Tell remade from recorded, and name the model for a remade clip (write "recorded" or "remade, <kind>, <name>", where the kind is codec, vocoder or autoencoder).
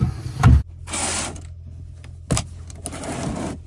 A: recorded